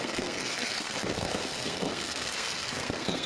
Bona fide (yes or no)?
no